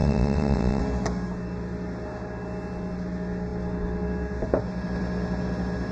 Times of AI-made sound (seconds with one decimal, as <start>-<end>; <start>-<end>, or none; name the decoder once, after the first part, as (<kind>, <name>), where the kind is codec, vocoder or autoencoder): 0.0-0.8 (vocoder, WaveNeXt)